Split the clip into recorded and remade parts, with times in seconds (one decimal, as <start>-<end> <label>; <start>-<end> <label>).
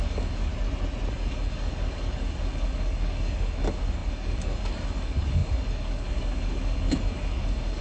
0.0-0.5 remade; 0.5-1.1 recorded; 1.1-7.8 remade